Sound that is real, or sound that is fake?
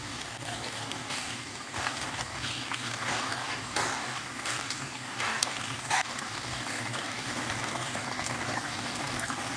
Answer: fake